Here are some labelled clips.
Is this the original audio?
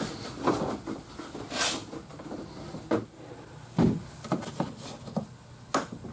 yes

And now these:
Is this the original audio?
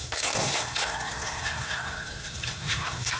no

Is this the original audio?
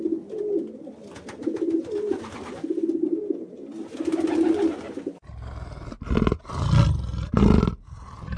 yes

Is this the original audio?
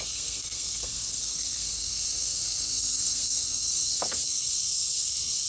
no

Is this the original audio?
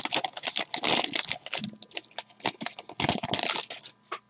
yes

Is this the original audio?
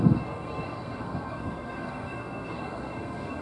no